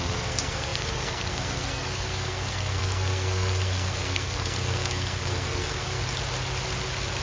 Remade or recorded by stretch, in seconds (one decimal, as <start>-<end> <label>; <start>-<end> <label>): 0.0-6.0 remade; 6.0-7.2 recorded